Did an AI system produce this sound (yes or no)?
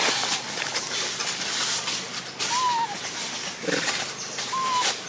no